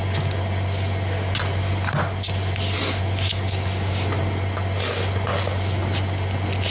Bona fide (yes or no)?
yes